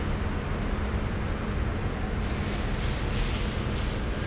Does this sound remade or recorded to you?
recorded